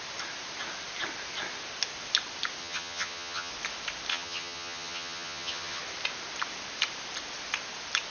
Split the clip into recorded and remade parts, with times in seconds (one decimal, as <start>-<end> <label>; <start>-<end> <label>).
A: 0.0-2.6 recorded; 2.6-3.5 remade; 3.5-4.1 recorded; 4.1-5.8 remade; 5.8-8.1 recorded